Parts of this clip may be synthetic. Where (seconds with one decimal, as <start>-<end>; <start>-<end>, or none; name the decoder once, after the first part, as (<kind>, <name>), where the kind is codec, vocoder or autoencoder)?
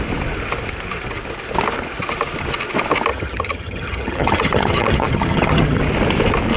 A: 3.1-5.8 (vocoder, HiFi-GAN)